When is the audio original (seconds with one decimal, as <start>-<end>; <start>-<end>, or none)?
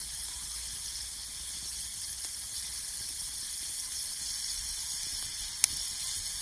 0.0-6.4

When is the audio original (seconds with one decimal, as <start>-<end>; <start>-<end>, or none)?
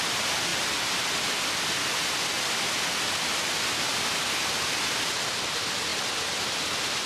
0.0-7.1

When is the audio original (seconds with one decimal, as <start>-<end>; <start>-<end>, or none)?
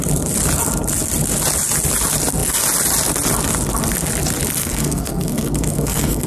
0.0-4.6